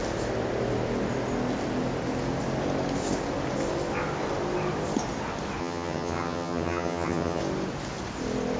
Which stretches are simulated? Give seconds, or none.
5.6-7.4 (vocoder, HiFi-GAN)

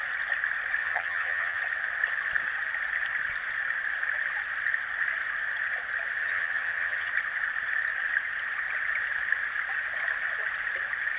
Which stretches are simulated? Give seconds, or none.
0.8-1.6 (vocoder, HiFi-GAN); 6.2-7.1

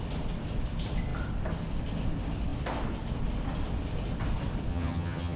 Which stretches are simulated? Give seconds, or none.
4.7-5.4 (vocoder, HiFi-GAN)